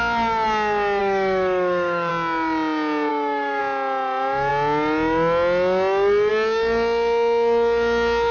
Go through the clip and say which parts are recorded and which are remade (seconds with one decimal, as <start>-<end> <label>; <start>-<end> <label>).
0.0-1.0 recorded; 1.0-2.1 remade; 2.1-3.1 recorded; 3.1-3.6 remade; 3.6-8.3 recorded